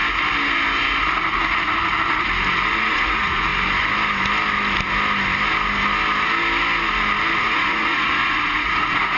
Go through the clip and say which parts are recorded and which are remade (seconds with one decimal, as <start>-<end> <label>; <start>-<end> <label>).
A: 0.0-2.8 recorded; 2.8-3.5 remade; 3.5-7.4 recorded; 7.4-9.2 remade